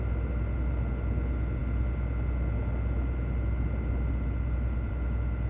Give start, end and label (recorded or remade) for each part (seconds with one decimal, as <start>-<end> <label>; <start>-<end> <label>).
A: 0.0-5.5 recorded

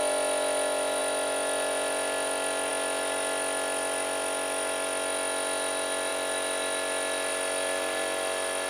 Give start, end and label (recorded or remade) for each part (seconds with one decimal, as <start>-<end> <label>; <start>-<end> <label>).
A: 0.0-8.7 recorded

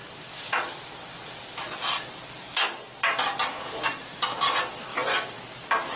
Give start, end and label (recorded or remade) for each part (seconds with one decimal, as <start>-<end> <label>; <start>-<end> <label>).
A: 0.0-3.6 remade; 3.6-4.9 recorded; 4.9-5.4 remade; 5.4-6.0 recorded

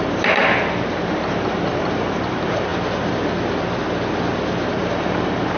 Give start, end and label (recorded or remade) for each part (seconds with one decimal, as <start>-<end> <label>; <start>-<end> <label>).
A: 0.0-0.4 remade; 0.4-1.1 recorded; 1.1-2.7 remade; 2.7-4.7 recorded; 4.7-5.6 remade

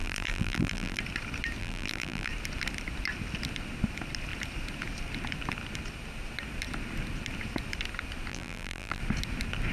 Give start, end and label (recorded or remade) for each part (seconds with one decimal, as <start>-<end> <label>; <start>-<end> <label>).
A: 0.0-1.0 remade; 1.0-1.6 recorded; 1.6-2.3 remade; 2.3-8.3 recorded; 8.3-9.0 remade; 9.0-9.7 recorded

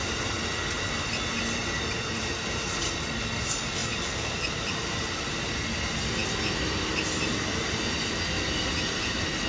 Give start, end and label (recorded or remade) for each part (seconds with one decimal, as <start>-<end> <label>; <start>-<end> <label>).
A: 0.0-3.8 recorded; 3.8-4.7 remade; 4.7-9.5 recorded

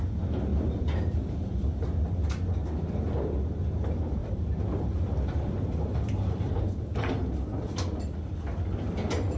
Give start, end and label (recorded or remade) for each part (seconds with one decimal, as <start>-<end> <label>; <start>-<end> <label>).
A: 0.0-4.2 recorded; 4.2-7.1 remade; 7.1-9.4 recorded

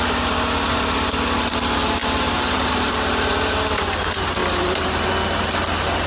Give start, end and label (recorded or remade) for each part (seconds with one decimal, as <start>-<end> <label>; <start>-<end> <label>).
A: 0.0-2.0 recorded; 2.0-2.9 remade; 2.9-4.4 recorded; 4.4-5.1 remade; 5.1-6.1 recorded